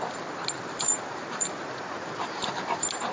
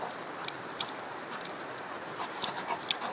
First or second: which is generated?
first